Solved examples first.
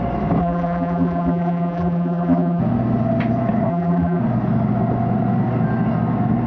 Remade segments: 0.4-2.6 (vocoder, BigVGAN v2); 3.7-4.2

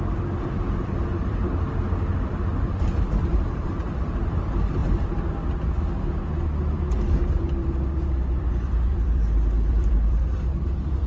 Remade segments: 0.0-4.8 (vocoder, BigVGAN v2); 7.2-11.1

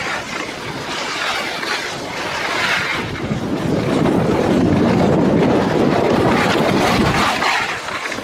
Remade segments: 2.9-6.0 (vocoder, BigVGAN v2)